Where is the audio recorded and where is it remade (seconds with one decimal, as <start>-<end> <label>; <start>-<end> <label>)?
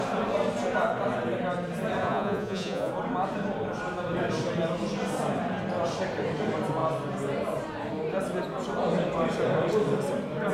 0.0-2.0 recorded; 2.0-2.9 remade; 2.9-10.5 recorded